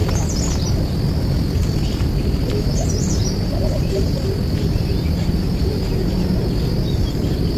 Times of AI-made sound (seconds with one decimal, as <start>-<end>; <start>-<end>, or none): 4.6-6.4; 7.0-7.6